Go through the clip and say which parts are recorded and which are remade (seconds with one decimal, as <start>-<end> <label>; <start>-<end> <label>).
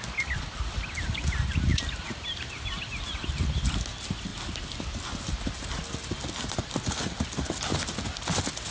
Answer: 0.0-8.7 recorded